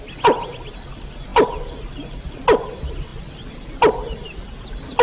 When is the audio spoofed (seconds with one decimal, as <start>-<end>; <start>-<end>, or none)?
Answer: 3.1-3.7